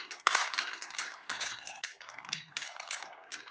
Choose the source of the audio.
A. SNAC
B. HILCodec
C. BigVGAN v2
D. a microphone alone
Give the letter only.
A